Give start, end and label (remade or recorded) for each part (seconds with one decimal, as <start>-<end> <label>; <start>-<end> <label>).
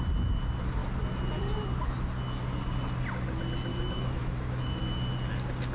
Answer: 0.0-3.7 recorded; 3.7-4.8 remade; 4.8-5.7 recorded